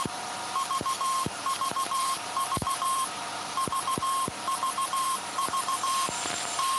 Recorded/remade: remade